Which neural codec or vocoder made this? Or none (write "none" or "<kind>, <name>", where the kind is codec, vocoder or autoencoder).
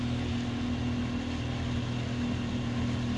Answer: none